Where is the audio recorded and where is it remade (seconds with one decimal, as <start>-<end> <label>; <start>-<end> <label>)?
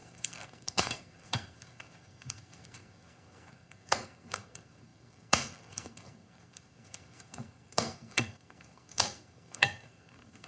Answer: 0.0-10.5 remade